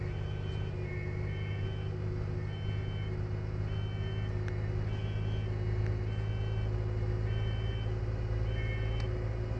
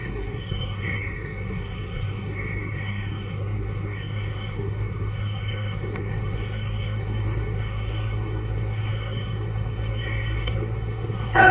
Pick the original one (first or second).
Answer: first